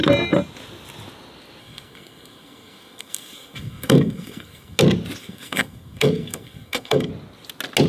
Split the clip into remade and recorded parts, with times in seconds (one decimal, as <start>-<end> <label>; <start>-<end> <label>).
0.0-1.6 recorded; 1.6-4.8 remade; 4.8-5.2 recorded; 5.2-7.1 remade; 7.1-7.9 recorded